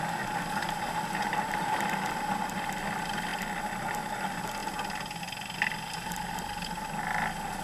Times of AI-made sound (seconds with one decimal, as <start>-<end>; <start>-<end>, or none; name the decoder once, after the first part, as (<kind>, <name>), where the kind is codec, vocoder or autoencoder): none